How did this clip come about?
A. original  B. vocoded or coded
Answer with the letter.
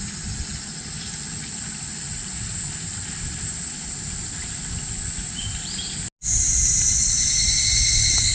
A